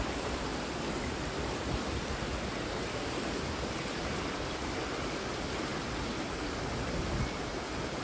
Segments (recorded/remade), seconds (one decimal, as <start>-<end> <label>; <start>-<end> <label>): 0.0-5.7 recorded; 5.7-6.4 remade; 6.4-7.0 recorded; 7.0-8.0 remade